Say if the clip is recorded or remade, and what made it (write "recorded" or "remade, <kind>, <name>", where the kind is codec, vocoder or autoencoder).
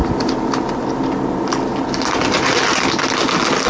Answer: recorded